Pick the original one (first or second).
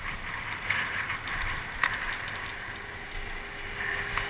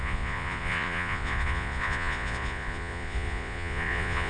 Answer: first